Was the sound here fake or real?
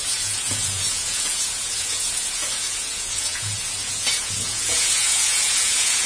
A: fake